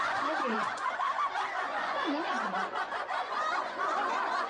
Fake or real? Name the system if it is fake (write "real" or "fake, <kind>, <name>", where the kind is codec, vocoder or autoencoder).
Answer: fake, vocoder, Vocos